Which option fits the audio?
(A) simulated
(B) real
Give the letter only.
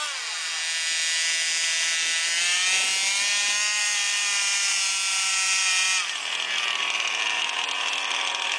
B